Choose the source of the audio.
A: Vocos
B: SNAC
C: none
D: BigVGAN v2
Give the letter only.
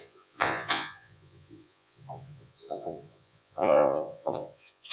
A